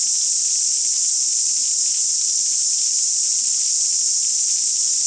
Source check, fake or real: real